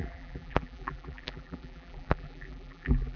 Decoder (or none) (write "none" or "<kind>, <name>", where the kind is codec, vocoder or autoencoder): vocoder, BigVGAN v2